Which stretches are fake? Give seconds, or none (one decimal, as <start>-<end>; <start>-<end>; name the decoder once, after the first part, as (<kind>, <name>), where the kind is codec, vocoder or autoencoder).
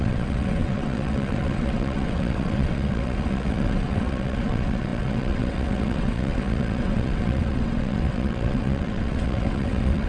0.0-10.1 (vocoder, WaveNeXt)